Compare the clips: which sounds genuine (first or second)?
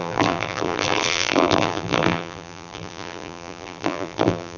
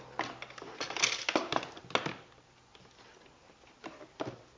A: second